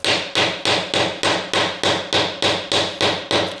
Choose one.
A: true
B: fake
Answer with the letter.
A